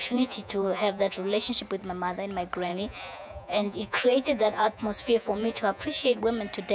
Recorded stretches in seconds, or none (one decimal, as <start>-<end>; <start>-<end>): 1.5-2.7; 6.2-6.7